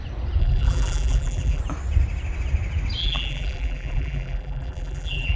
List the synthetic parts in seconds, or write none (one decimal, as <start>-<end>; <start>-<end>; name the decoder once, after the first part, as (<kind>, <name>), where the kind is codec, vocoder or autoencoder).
0.4-1.6 (vocoder, BigVGAN v2); 3.0-5.4

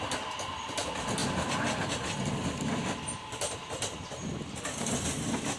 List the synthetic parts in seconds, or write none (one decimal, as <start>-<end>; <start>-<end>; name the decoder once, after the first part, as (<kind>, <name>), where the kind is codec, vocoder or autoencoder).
none

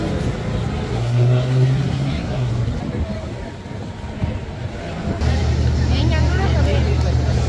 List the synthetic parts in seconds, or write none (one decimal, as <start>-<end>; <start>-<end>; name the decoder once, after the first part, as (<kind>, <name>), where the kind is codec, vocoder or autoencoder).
0.9-2.5 (codec, SNAC)

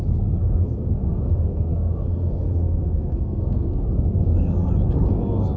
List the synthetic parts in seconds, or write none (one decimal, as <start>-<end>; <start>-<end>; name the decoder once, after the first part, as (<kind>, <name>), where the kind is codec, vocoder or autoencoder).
0.4-3.8 (codec, SNAC)

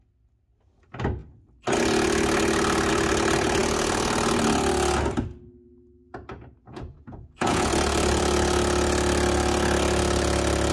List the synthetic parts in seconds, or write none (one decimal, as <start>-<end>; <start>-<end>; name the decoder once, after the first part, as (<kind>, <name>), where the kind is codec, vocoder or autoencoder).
6.7-7.7 (vocoder, Vocos)

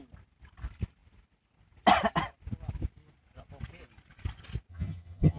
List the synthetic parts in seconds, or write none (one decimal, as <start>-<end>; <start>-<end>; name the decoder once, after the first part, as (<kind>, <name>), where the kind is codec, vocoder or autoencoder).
4.7-5.4 (vocoder, HiFi-GAN)